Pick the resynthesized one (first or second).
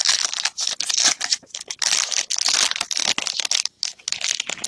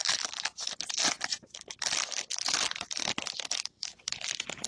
second